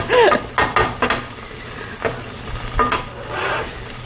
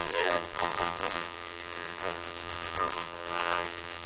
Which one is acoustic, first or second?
first